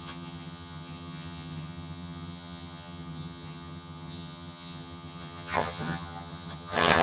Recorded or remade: remade